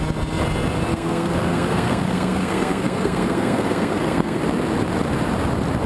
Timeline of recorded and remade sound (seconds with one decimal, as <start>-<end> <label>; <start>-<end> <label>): 0.0-0.9 recorded; 0.9-4.4 remade; 4.4-5.9 recorded